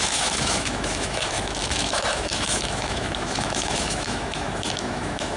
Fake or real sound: fake